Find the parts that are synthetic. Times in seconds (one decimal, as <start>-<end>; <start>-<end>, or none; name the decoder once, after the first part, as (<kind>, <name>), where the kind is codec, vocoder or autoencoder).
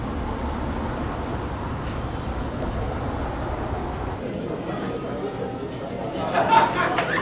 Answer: 2.4-3.0 (codec, HILCodec)